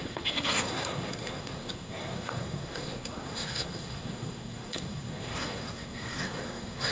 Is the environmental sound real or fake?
fake